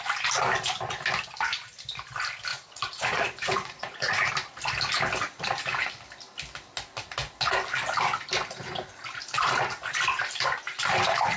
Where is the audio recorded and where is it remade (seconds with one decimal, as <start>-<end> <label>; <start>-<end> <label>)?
0.0-2.5 recorded; 2.5-4.3 remade; 4.3-11.4 recorded